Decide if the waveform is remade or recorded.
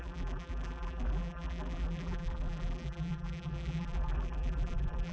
remade